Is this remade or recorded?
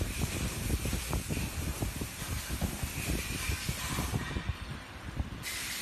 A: remade